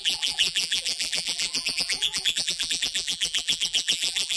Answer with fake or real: fake